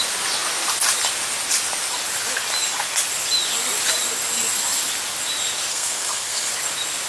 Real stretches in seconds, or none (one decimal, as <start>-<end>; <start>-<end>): 0.0-5.7; 6.5-7.1